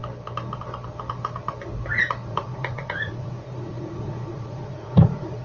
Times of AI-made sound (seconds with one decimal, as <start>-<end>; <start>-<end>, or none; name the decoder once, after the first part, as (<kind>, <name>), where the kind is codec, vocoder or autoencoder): 2.3-5.4 (vocoder, Vocos)